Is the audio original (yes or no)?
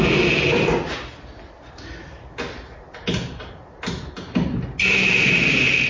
yes